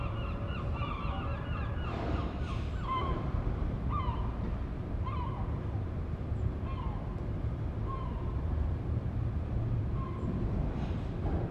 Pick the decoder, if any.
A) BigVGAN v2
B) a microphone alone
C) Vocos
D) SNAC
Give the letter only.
A